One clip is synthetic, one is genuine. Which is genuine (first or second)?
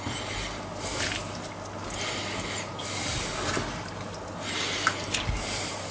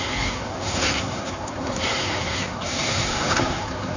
first